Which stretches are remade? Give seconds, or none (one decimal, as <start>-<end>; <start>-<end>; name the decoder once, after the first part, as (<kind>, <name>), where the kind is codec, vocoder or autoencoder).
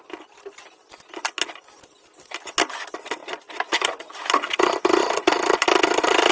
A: none